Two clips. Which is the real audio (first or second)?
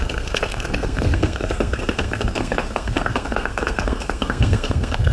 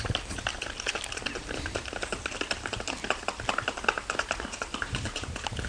second